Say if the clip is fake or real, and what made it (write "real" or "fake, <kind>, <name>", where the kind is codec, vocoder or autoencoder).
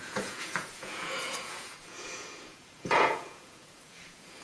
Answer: fake, vocoder, Vocos